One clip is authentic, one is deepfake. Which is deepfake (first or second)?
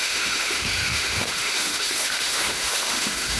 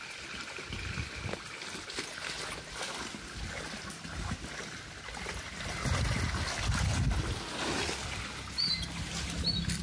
first